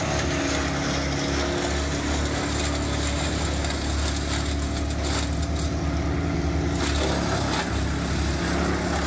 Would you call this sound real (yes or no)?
yes